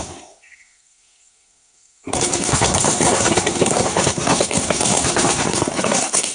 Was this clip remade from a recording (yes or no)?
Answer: yes